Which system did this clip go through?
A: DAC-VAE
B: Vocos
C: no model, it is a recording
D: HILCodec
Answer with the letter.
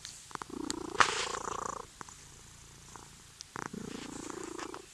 C